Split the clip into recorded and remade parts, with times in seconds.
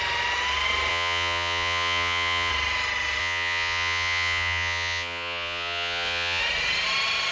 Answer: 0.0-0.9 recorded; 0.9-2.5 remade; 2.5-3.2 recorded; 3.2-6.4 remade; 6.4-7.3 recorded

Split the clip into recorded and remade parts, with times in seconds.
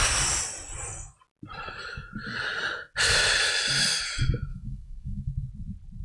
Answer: 0.0-4.5 recorded; 4.5-5.3 remade; 5.3-6.0 recorded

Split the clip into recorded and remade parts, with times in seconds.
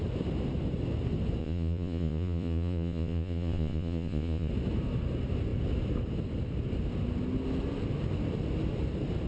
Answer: 0.0-1.4 recorded; 1.4-4.5 remade; 4.5-9.3 recorded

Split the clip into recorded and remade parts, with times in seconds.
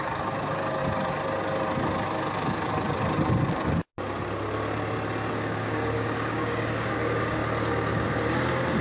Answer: 0.0-0.8 remade; 0.8-5.3 recorded; 5.3-7.4 remade; 7.4-8.3 recorded; 8.3-8.8 remade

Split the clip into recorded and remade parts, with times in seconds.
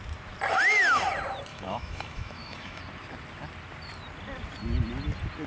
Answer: 0.0-1.5 recorded; 1.5-2.8 remade; 2.8-5.5 recorded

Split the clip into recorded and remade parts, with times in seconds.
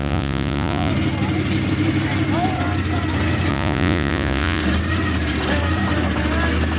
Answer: 0.0-0.9 remade; 0.9-3.5 recorded; 3.5-4.6 remade; 4.6-6.8 recorded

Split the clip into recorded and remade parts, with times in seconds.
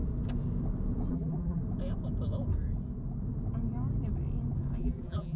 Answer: 0.0-1.1 recorded; 1.1-1.6 remade; 1.6-4.8 recorded; 4.8-5.4 remade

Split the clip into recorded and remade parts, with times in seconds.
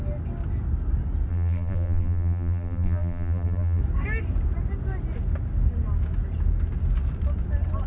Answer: 0.0-1.3 recorded; 1.3-3.8 remade; 3.8-7.9 recorded